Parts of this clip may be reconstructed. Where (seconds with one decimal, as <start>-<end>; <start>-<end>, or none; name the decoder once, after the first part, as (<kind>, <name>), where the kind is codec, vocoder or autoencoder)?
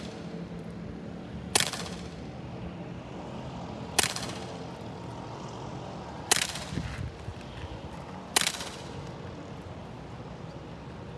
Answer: none